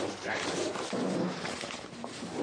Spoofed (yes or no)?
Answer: no